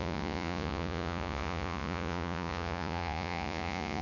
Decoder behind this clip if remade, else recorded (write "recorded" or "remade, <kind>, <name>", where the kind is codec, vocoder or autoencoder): remade, vocoder, Vocos